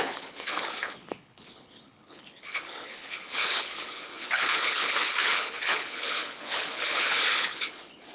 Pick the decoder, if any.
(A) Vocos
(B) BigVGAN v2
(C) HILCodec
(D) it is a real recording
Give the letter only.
C